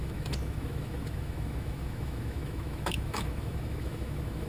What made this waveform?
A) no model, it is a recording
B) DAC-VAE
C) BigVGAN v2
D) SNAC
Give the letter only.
B